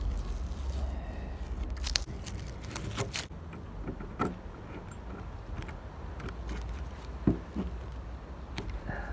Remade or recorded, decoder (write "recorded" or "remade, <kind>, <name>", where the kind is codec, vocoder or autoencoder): recorded